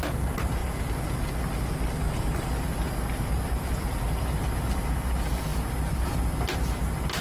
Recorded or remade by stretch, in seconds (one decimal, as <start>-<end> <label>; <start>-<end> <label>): 0.0-5.5 recorded; 5.5-6.1 remade; 6.1-7.2 recorded